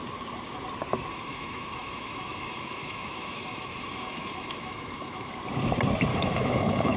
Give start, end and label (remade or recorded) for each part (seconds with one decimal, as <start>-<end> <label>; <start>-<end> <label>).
0.0-1.1 recorded; 1.1-5.3 remade; 5.3-6.1 recorded; 6.1-7.0 remade